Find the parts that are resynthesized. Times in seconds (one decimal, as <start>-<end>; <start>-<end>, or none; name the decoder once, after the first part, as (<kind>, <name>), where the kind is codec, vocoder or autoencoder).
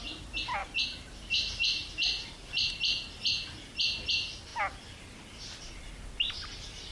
0.6-2.7 (vocoder, BigVGAN v2)